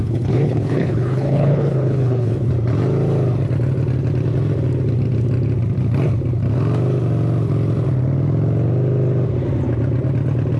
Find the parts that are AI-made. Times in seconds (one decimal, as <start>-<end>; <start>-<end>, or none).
0.0-2.5